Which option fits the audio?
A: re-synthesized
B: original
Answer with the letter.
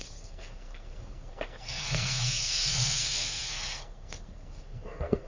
A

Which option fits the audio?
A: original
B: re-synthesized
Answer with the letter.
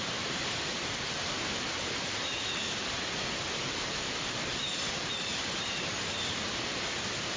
B